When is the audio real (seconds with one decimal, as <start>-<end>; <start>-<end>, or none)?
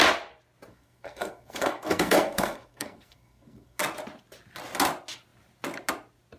0.0-0.7; 3.8-6.4